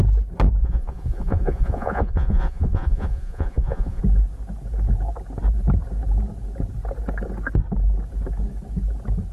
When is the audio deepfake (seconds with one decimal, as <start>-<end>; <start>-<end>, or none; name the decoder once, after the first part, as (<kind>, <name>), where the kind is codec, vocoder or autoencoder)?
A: 0.6-4.0 (vocoder, Vocos)